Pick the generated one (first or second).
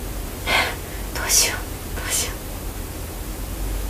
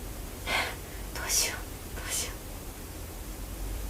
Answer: second